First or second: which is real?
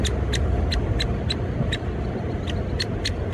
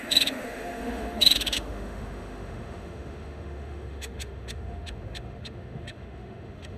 first